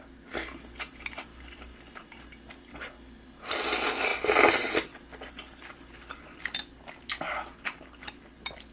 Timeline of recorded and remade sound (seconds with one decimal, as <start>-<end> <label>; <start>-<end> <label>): 0.0-8.7 recorded